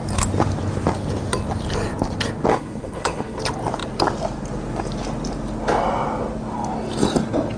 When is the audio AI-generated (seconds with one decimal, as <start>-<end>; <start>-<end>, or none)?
2.5-3.4